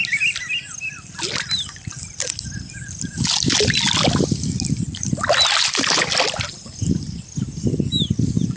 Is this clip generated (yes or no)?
no